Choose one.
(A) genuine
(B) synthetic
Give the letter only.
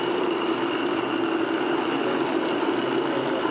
A